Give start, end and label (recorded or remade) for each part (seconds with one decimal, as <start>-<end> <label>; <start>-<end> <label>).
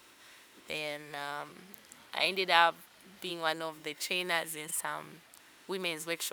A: 0.0-1.5 remade; 1.5-3.3 recorded; 3.3-4.7 remade; 4.7-5.4 recorded; 5.4-6.3 remade